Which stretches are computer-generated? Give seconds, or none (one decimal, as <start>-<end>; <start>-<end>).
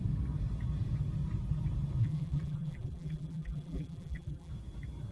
2.0-4.5